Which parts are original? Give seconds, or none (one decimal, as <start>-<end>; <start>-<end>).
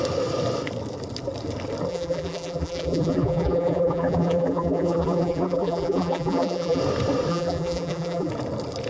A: 0.0-1.9; 6.8-7.3; 8.3-8.9